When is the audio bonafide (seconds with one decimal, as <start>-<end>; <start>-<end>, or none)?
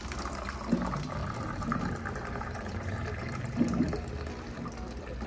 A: 0.0-1.2; 3.6-5.3